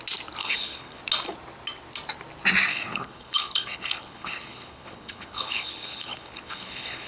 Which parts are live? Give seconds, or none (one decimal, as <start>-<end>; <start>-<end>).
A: 0.0-0.4; 1.0-2.7